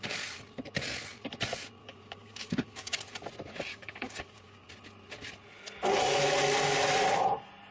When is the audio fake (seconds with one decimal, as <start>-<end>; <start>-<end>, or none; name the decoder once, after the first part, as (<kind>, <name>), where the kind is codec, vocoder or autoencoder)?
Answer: 1.8-3.0 (codec, DAC); 3.7-4.7